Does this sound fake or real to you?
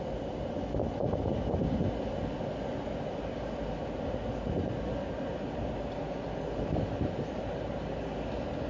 real